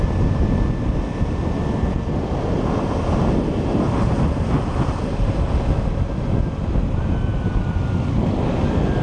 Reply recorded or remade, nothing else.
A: recorded